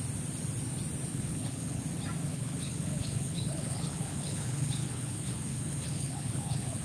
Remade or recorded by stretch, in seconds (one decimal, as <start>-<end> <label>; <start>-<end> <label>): 0.0-1.1 recorded; 1.1-1.8 remade; 1.8-2.3 recorded; 2.3-6.8 remade